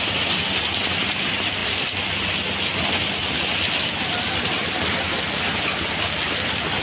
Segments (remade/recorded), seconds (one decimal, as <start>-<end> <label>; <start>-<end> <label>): 0.0-6.8 recorded